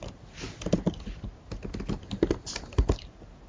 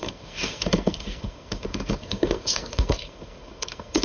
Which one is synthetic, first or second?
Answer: second